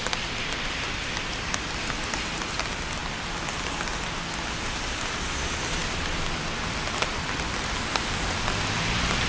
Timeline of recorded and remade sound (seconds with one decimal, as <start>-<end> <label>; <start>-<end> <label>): 0.0-9.3 recorded